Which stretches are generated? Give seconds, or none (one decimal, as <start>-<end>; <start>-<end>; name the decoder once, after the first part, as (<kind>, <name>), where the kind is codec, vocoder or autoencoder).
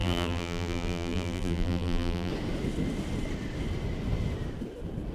0.0-2.3 (vocoder, BigVGAN v2)